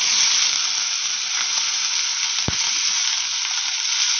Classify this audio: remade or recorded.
recorded